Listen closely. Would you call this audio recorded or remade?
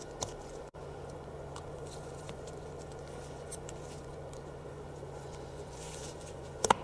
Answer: remade